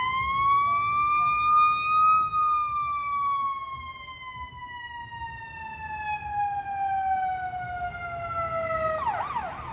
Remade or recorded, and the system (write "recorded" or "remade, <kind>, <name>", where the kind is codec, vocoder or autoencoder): recorded